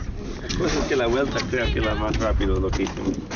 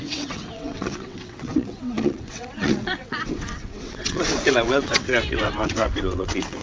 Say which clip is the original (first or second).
first